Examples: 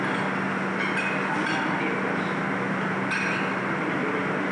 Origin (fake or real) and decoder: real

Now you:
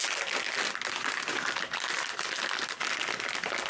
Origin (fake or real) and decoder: real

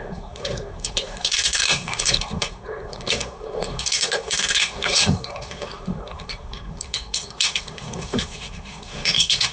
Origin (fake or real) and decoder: fake, codec, SNAC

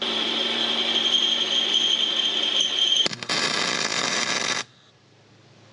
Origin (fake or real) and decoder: fake, vocoder, BigVGAN v2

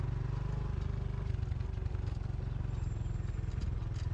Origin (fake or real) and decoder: real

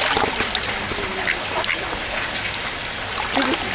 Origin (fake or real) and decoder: real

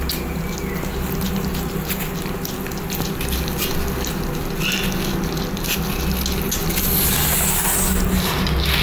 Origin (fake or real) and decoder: real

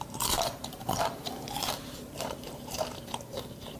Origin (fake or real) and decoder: fake, vocoder, BigVGAN v2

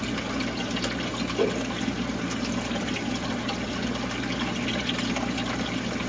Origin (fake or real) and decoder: real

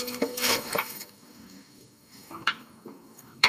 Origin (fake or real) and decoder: fake, codec, DAC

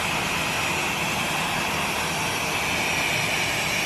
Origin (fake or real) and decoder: real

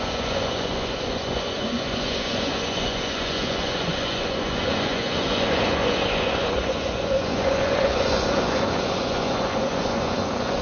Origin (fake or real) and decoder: fake, vocoder, Vocos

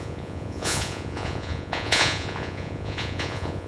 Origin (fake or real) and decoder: fake, vocoder, Vocos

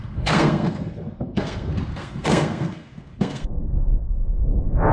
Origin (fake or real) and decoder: fake, codec, SNAC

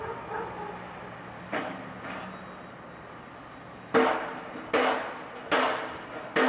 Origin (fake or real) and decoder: real